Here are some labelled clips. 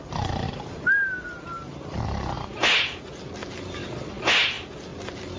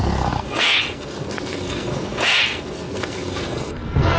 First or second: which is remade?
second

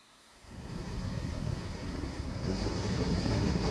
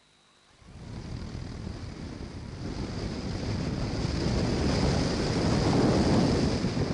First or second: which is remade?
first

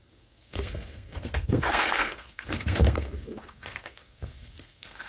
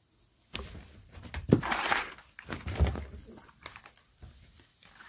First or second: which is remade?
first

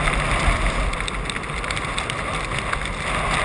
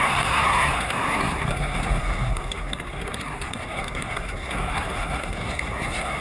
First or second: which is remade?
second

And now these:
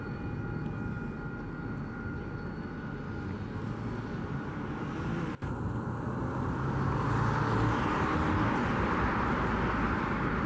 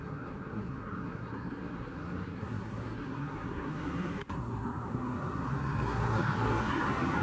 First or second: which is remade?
second